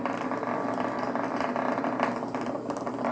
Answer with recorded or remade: recorded